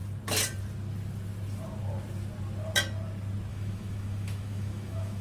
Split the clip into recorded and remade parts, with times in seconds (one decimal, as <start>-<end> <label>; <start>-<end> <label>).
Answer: 0.0-3.5 recorded; 3.5-5.2 remade